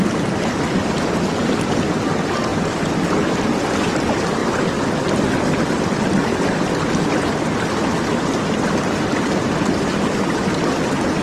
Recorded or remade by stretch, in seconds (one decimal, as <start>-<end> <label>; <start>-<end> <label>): 0.0-11.2 recorded